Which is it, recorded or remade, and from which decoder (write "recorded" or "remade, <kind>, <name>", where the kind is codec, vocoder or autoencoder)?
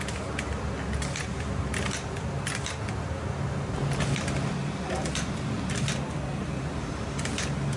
recorded